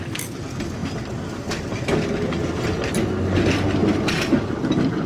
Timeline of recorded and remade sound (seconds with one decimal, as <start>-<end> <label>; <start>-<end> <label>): 0.0-3.8 recorded; 3.8-5.1 remade